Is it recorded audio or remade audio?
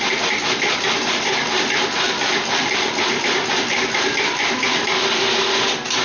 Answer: recorded